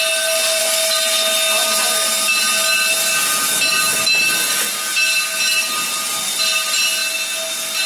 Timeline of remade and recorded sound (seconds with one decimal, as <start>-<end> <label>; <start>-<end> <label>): 0.0-7.9 recorded